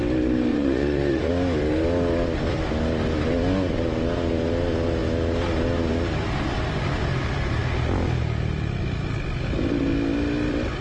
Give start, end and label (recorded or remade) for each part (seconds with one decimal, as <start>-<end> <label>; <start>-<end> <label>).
0.0-0.5 recorded; 0.5-1.3 remade; 1.3-10.8 recorded